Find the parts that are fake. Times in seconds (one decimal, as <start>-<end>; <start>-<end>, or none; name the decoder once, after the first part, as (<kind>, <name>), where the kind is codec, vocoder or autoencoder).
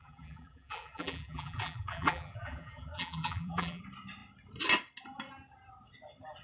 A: 0.0-3.8 (vocoder, BigVGAN v2)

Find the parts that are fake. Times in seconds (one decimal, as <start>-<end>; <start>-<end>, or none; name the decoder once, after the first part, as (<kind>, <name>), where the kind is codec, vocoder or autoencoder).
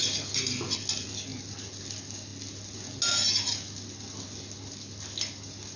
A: 1.3-1.8 (vocoder, BigVGAN v2)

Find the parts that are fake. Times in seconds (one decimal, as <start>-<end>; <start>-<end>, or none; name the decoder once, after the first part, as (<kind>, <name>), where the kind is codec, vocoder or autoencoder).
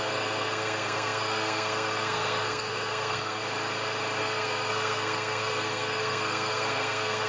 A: 0.0-3.4 (codec, SNAC); 4.2-7.3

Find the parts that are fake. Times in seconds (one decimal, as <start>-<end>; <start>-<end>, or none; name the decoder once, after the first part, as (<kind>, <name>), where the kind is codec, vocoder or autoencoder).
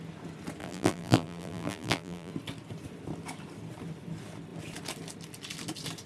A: 0.6-2.3 (vocoder, BigVGAN v2)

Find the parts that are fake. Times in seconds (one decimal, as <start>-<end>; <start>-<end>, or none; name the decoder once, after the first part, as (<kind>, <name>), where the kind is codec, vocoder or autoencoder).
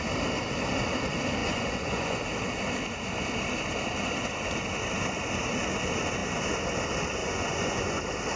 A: 1.4-2.2 (vocoder, Vocos); 7.2-8.0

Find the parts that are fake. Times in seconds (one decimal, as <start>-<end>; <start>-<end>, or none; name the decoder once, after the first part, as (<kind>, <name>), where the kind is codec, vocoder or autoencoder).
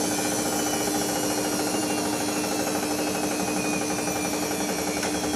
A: none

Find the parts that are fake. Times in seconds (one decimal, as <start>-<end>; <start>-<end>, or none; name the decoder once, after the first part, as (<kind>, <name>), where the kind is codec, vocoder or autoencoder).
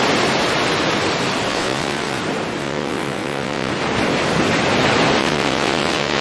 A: 1.5-2.2 (vocoder, WaveNeXt); 2.6-3.7; 5.2-6.2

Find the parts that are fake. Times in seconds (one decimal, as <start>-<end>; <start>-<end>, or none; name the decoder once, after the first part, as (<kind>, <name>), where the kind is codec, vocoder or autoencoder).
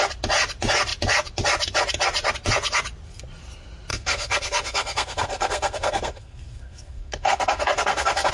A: 3.9-8.3 (codec, SNAC)